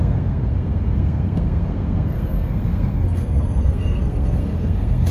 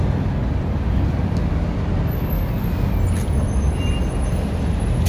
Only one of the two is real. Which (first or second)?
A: second